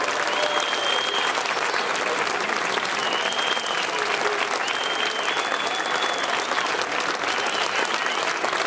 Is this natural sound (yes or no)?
yes